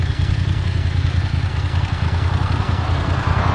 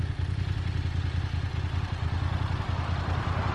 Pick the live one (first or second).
second